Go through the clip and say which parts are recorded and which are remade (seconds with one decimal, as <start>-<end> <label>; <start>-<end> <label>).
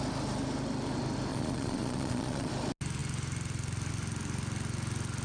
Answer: 0.0-1.3 recorded; 1.3-2.5 remade; 2.5-5.2 recorded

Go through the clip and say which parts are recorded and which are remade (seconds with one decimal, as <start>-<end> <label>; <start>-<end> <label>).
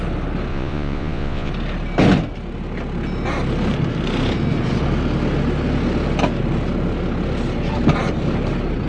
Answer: 0.0-0.5 recorded; 0.5-1.5 remade; 1.5-8.9 recorded